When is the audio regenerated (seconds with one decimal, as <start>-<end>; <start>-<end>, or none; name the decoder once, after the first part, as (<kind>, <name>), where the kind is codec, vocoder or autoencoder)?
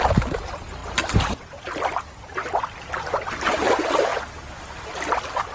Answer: none